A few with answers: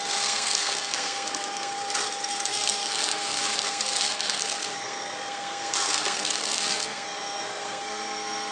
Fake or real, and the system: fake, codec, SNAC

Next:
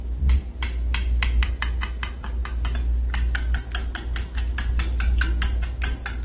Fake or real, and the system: real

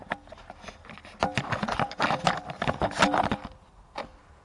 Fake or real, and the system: real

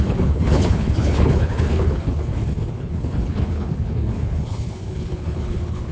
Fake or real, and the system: fake, codec, HILCodec